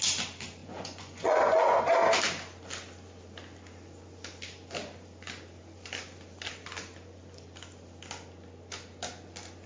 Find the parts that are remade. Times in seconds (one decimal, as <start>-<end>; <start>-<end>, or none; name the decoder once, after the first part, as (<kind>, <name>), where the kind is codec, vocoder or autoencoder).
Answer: 0.6-1.8 (vocoder, Vocos)